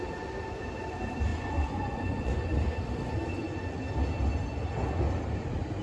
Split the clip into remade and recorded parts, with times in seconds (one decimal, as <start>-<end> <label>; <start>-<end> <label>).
0.0-1.3 recorded; 1.3-2.3 remade; 2.3-3.3 recorded; 3.3-3.8 remade; 3.8-5.8 recorded